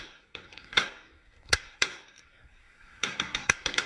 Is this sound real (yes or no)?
no